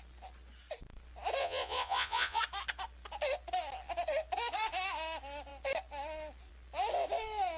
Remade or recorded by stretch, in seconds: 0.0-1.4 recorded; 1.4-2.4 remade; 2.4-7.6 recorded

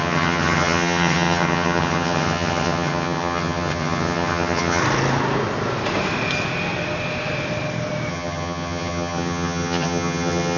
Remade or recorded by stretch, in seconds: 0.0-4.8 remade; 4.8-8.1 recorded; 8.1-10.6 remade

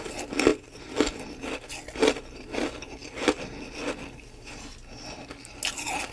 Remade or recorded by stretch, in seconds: 0.0-6.1 recorded

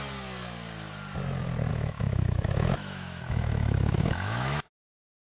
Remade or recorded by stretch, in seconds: 0.0-1.7 recorded; 1.7-5.3 remade

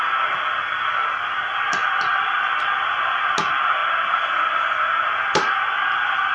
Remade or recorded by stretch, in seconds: 0.0-6.3 recorded

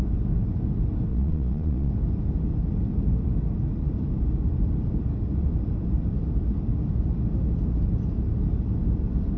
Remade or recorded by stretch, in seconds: 0.0-1.1 recorded; 1.1-1.9 remade; 1.9-9.4 recorded

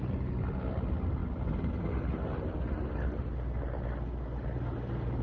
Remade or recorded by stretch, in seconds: 0.0-5.2 recorded

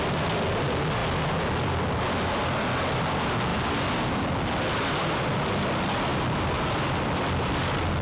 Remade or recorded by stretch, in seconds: 0.0-1.0 remade; 1.0-2.9 recorded; 2.9-8.0 remade